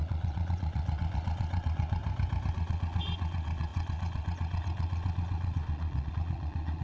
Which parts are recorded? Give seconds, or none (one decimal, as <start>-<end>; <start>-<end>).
2.0-2.5